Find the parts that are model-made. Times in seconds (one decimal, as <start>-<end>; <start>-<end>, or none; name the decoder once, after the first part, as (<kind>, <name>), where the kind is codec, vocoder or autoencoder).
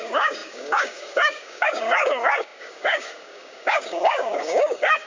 0.0-5.1 (codec, DAC)